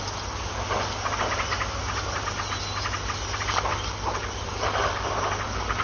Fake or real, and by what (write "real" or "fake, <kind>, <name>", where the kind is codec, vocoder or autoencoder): real